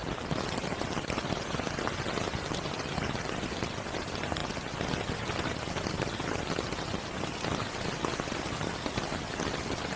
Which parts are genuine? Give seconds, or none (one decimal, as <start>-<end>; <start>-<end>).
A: 4.4-5.7